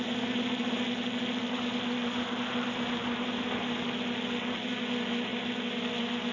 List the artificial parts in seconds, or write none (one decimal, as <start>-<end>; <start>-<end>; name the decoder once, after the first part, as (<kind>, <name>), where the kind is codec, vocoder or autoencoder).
none

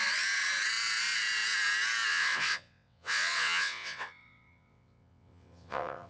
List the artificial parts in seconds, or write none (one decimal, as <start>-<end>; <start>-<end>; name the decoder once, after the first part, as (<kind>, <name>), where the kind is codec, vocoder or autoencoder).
2.1-6.1 (vocoder, WaveNeXt)

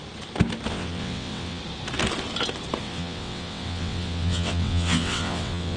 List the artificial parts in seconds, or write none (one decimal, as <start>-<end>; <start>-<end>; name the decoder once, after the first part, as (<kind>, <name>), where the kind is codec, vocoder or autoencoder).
0.7-1.6 (vocoder, WaveNeXt); 2.8-5.8

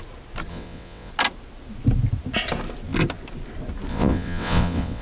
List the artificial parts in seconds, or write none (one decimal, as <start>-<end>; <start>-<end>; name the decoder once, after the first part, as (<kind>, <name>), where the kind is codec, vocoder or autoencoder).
0.5-1.1 (vocoder, WaveNeXt); 3.9-5.0

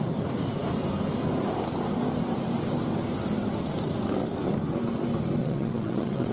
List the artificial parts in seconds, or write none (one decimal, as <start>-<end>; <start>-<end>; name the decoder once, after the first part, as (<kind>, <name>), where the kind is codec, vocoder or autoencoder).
5.4-6.3 (vocoder, WaveNeXt)

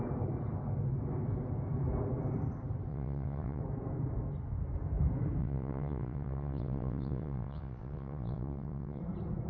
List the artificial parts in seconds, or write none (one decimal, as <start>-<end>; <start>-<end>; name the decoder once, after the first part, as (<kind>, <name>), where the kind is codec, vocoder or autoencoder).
2.9-3.6 (vocoder, WaveNeXt); 5.4-9.0

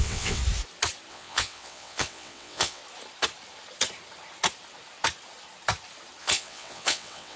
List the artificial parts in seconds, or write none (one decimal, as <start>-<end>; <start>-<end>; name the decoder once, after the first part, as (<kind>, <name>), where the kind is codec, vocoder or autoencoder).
0.0-0.4 (vocoder, WaveNeXt); 1.1-2.8; 6.2-7.4

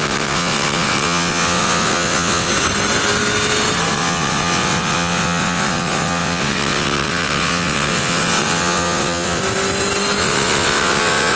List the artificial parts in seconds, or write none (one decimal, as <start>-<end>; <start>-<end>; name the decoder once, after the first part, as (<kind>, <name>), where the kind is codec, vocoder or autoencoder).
0.0-2.5 (vocoder, WaveNeXt); 3.9-9.4; 10.2-11.4